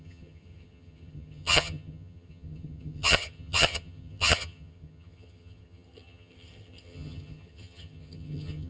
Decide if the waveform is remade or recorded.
remade